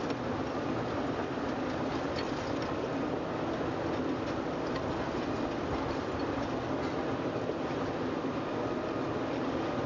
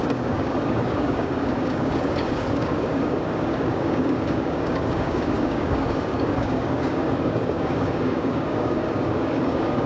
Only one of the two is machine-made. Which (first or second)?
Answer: second